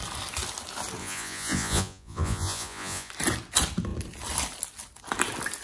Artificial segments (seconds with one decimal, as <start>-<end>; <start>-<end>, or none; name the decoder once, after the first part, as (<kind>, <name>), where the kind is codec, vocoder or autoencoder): 1.0-3.1 (vocoder, Vocos)